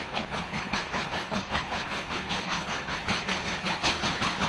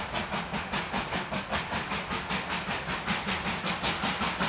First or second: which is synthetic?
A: first